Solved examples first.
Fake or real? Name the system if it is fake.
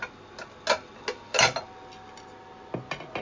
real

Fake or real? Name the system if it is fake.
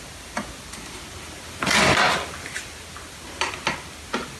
real